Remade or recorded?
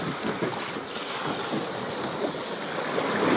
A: recorded